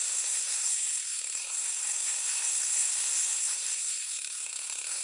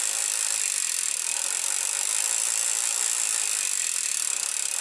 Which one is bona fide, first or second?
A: second